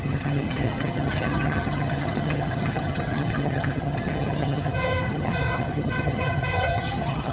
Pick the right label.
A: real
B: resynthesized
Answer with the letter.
B